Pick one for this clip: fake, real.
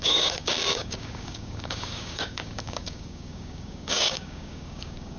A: fake